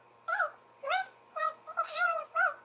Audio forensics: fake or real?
fake